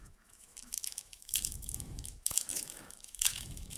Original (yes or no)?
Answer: no